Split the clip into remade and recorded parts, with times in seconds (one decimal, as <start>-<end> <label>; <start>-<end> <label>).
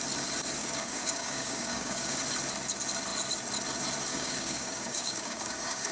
0.0-0.6 recorded; 0.6-2.2 remade; 2.2-4.1 recorded; 4.1-5.9 remade